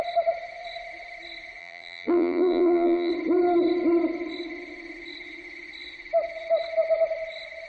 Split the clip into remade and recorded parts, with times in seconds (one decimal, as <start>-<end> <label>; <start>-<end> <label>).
0.0-1.6 recorded; 1.6-3.1 remade; 3.1-7.7 recorded